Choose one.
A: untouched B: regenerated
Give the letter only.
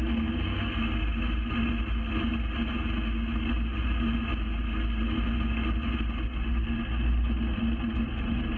A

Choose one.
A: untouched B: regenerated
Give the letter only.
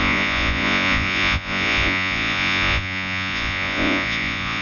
B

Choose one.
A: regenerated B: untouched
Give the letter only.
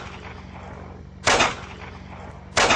B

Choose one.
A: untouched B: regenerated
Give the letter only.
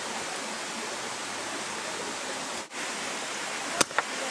A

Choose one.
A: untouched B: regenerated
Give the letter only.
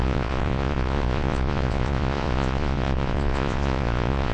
B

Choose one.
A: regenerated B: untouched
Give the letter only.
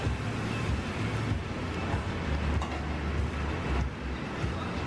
B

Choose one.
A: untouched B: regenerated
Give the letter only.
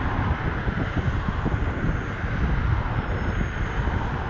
A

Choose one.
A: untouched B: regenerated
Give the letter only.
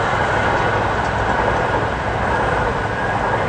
A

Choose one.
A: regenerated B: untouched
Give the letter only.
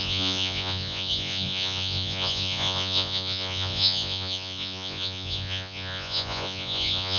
A